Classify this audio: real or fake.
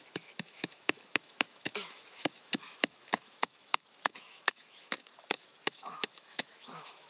fake